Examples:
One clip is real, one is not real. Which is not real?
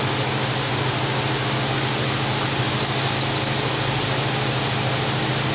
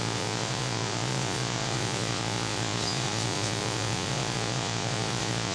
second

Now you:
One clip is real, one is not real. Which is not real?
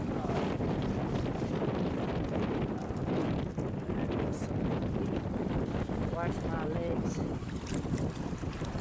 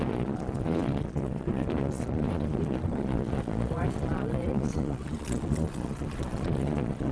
second